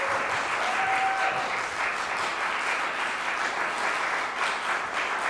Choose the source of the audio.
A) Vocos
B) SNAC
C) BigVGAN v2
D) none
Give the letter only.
D